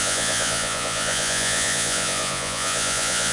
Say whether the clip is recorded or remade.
remade